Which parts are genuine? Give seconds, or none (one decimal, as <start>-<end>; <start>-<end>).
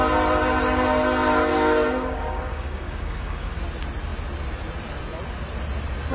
0.0-1.5; 3.6-6.1